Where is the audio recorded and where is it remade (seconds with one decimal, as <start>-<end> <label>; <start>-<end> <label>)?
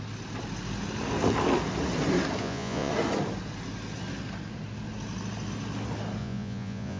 0.0-2.4 recorded; 2.4-2.9 remade; 2.9-6.2 recorded; 6.2-7.0 remade